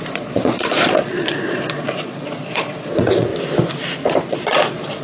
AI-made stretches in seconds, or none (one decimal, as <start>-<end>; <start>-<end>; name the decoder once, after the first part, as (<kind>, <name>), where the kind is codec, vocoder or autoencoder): 0.0-3.3 (vocoder, Vocos); 4.3-5.0